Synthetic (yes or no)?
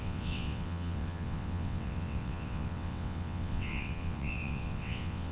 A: yes